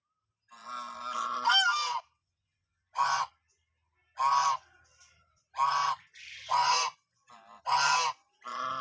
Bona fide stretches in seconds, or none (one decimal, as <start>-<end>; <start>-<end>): 0.0-2.2; 3.3-6.5; 7.3-8.8